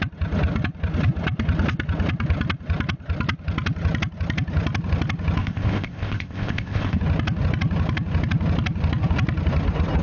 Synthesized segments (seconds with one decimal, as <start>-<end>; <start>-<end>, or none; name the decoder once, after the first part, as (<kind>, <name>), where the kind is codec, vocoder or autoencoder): 5.4-7.0 (codec, ZipCodec)